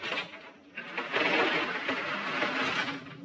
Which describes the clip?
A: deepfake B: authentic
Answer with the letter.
B